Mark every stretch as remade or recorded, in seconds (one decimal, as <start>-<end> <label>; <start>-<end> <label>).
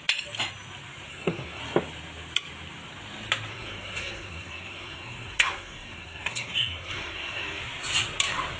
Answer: 0.0-1.1 recorded; 1.1-1.6 remade; 1.6-3.5 recorded; 3.5-7.6 remade; 7.6-8.6 recorded